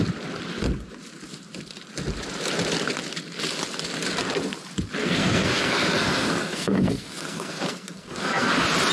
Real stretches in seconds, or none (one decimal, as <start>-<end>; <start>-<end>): 0.0-5.0; 8.5-8.9